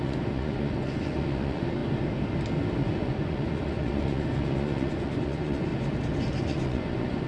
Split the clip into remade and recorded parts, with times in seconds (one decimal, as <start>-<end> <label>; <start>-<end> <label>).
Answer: 0.0-1.8 remade; 1.8-2.8 recorded; 2.8-5.7 remade; 5.7-6.4 recorded; 6.4-7.3 remade